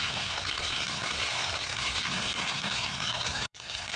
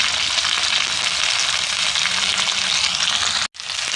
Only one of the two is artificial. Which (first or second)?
first